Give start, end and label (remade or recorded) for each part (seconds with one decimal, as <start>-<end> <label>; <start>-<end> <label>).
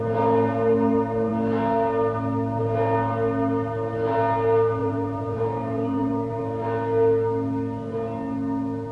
0.0-4.8 recorded; 4.8-6.4 remade; 6.4-8.9 recorded